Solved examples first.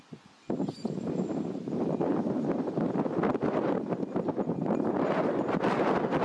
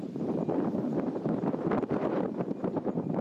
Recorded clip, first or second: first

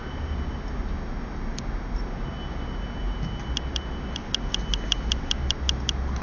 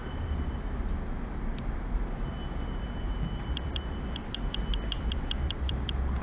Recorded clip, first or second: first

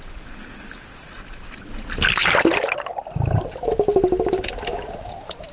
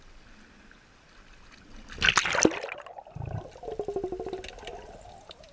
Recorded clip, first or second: second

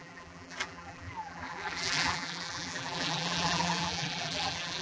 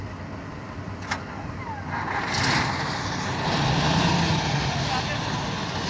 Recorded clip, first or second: second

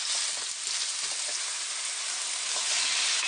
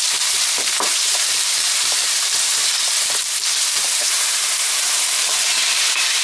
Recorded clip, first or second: first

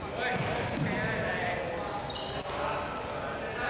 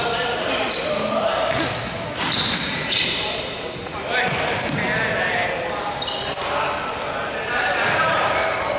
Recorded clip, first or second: first